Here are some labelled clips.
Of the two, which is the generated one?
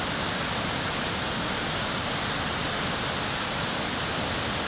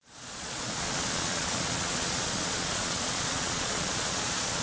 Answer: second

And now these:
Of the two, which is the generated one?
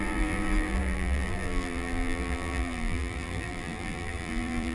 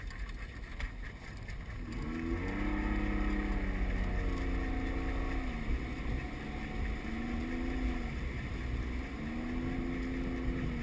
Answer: first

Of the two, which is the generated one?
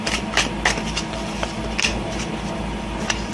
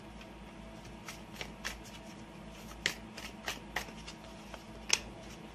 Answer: first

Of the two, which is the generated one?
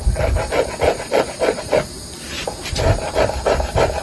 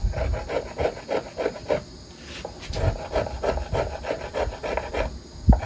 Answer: first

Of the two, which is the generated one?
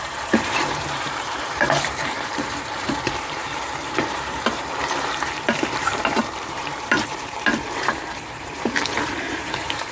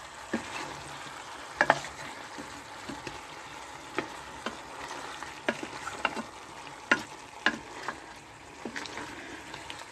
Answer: first